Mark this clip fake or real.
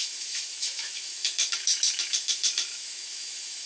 fake